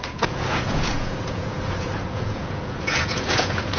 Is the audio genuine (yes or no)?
no